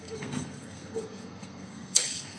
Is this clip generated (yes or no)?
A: yes